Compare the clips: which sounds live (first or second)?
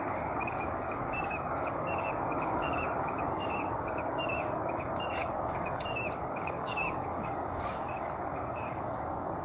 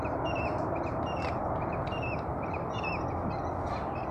second